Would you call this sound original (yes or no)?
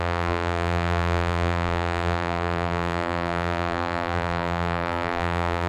no